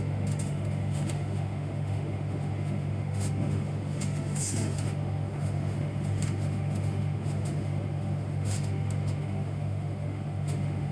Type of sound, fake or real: fake